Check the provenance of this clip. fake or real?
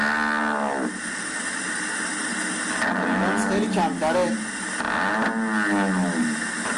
real